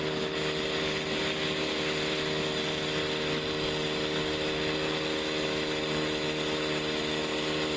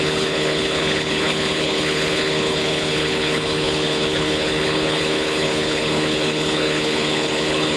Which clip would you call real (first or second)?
first